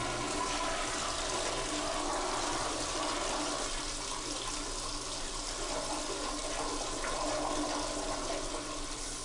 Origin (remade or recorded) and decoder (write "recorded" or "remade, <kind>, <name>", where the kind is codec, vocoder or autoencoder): recorded